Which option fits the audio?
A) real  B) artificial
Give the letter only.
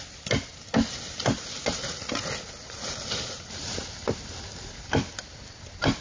A